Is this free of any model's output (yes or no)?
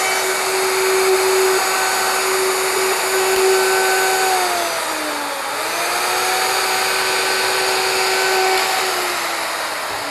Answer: yes